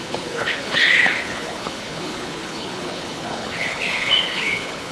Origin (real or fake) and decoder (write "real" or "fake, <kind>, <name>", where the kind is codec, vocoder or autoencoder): fake, codec, HILCodec